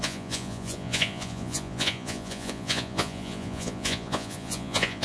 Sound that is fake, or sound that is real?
fake